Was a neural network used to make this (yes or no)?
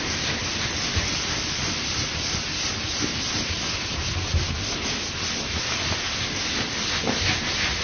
no